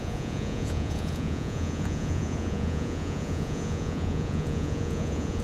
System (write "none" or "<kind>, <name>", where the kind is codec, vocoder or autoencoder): vocoder, Vocos